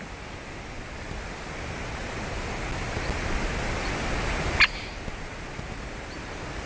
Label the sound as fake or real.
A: real